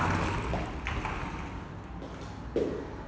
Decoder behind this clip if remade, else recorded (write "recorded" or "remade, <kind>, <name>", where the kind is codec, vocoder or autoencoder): recorded